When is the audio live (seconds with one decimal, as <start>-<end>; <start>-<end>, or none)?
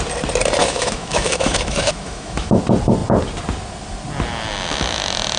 0.0-0.6; 2.6-5.4